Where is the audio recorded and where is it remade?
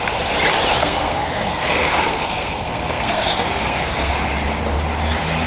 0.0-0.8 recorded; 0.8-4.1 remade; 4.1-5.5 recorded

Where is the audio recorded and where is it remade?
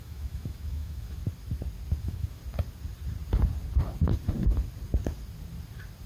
0.0-1.2 remade; 1.2-2.0 recorded; 2.0-2.4 remade; 2.4-6.1 recorded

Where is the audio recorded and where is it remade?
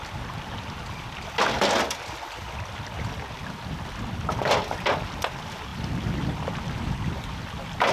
0.0-7.9 recorded